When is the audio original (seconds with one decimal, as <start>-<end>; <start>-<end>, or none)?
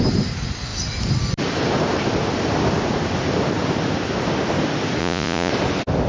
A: 0.0-5.0; 5.5-6.1